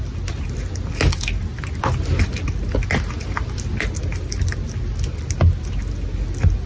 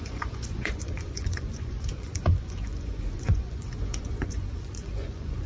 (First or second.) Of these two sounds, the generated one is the second